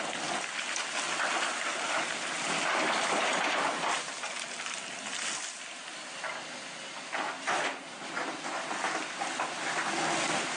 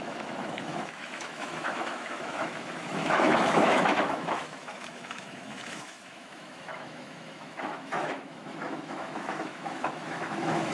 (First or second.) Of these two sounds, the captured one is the first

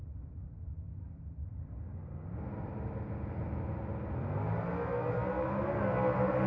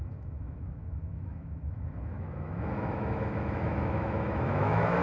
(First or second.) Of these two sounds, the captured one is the first